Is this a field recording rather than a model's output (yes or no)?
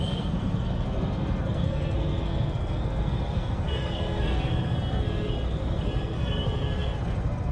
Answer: no